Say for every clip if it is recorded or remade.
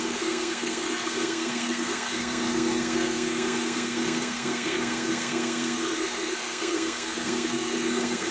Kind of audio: remade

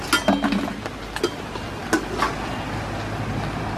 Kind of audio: recorded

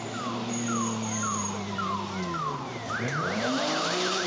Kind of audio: recorded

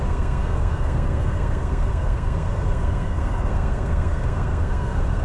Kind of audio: remade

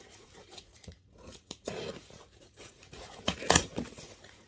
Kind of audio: remade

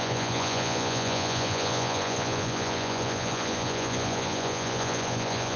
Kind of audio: remade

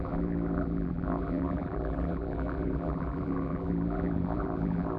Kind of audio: remade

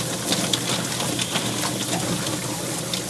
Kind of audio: recorded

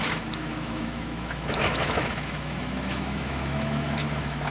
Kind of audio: remade